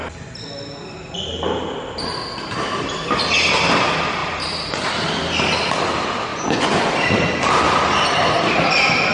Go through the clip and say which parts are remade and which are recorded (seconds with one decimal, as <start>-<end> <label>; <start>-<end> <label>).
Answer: 0.0-6.3 recorded; 6.3-6.9 remade; 6.9-9.1 recorded